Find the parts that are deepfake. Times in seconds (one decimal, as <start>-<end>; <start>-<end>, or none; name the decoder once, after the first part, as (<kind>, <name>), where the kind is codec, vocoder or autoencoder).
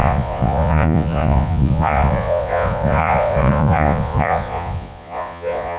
0.0-5.8 (vocoder, Vocos)